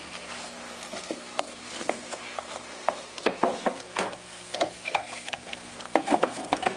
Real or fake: fake